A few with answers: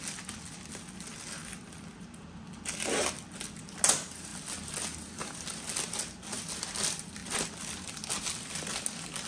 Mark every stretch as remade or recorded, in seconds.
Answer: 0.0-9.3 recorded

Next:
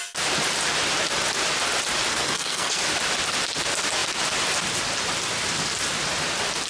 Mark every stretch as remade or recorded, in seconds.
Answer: 0.0-2.1 recorded; 2.1-2.8 remade; 2.8-6.7 recorded

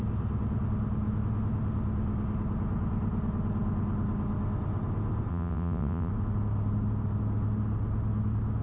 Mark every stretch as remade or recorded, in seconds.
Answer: 0.0-5.3 recorded; 5.3-6.1 remade; 6.1-8.6 recorded

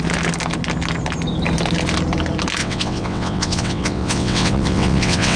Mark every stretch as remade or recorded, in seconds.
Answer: 0.0-2.6 recorded; 2.6-5.4 remade

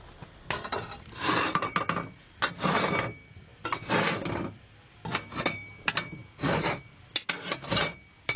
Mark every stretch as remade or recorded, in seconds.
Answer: 0.0-8.4 recorded

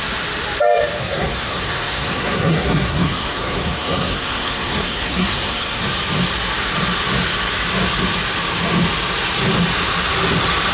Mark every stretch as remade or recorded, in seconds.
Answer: 0.0-1.0 recorded; 1.0-5.8 remade; 5.8-10.7 recorded